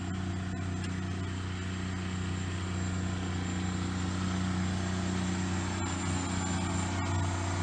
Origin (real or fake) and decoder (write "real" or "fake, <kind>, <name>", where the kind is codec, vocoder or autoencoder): real